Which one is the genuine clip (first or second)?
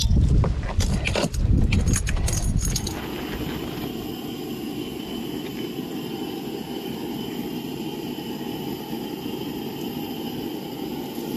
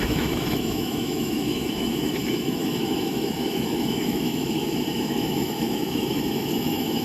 first